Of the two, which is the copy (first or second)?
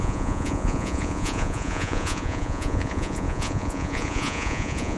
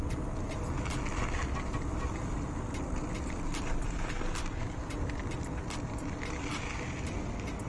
first